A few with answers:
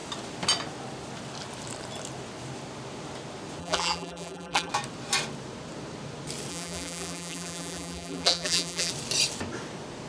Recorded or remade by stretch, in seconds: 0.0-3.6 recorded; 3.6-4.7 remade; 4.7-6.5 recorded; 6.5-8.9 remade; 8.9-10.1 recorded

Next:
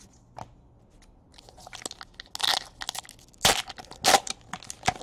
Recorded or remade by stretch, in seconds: 0.0-5.0 recorded

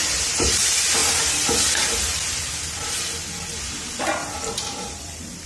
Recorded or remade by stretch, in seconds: 0.0-0.6 remade; 0.6-4.2 recorded; 4.2-5.5 remade

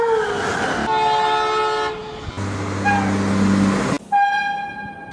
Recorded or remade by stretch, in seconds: 0.0-5.1 recorded

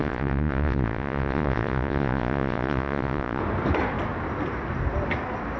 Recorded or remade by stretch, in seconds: 0.0-3.4 remade; 3.4-5.6 recorded

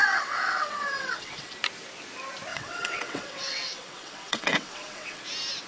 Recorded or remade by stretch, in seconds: 0.0-1.5 remade; 1.5-2.5 recorded; 2.5-5.2 remade; 5.2-5.7 recorded

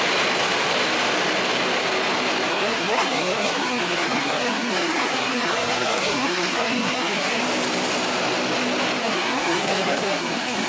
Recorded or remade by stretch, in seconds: 0.0-2.5 recorded; 2.5-7.4 remade; 7.4-9.0 recorded; 9.0-10.7 remade